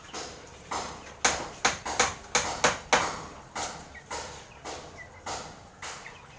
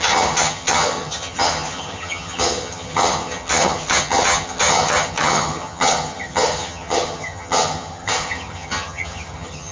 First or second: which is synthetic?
second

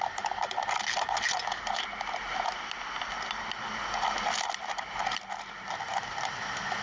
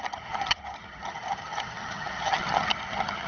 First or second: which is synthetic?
second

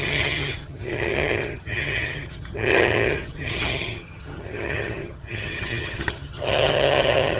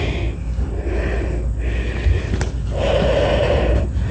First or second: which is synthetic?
first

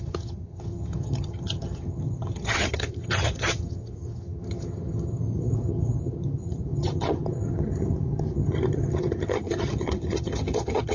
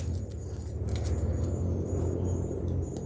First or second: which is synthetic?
first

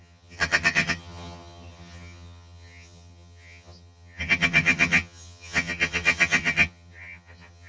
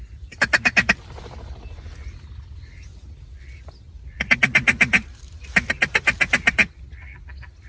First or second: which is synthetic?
first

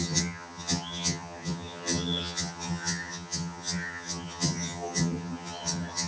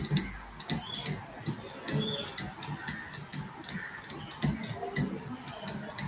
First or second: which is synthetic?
first